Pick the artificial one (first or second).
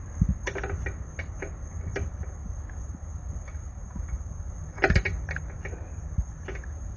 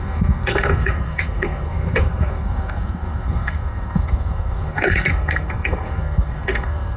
second